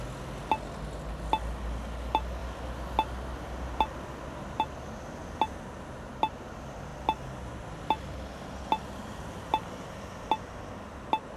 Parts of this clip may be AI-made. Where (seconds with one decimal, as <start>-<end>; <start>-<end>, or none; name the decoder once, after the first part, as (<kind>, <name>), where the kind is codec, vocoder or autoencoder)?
none